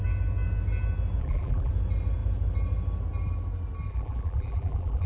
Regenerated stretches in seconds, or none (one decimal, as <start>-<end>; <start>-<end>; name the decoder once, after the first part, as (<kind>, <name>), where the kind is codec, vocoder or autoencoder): 1.2-1.7 (vocoder, BigVGAN v2); 3.9-5.1